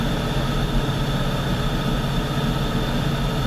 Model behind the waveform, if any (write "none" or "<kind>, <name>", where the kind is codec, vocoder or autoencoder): none